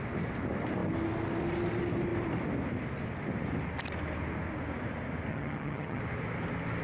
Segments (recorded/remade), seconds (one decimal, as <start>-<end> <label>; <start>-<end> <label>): 0.0-5.3 recorded; 5.3-6.0 remade; 6.0-6.8 recorded